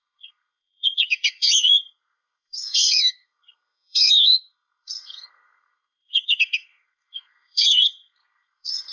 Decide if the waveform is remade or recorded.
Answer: remade